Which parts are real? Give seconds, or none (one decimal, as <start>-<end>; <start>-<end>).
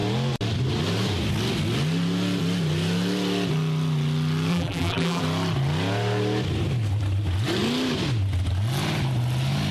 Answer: 0.0-4.5; 5.2-9.7